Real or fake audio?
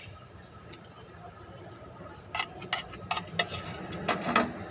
real